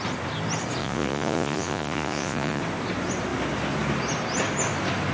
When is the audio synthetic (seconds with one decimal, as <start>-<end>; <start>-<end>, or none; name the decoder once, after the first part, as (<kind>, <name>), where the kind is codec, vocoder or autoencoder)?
0.8-2.6 (vocoder, Vocos)